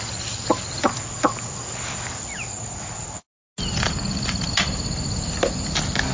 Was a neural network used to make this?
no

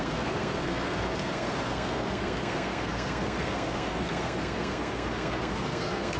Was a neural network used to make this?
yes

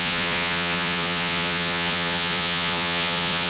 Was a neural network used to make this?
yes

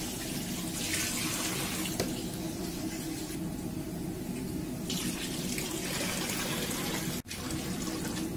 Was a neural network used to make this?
no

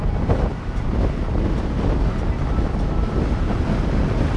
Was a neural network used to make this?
no